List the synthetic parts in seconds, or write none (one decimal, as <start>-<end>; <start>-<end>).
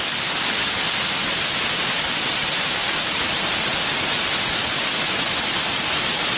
2.3-4.2